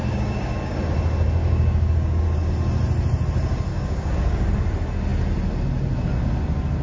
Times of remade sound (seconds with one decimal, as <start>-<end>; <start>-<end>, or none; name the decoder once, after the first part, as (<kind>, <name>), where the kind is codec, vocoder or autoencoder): 0.0-0.8 (codec, DAC); 1.4-2.5; 3.7-4.5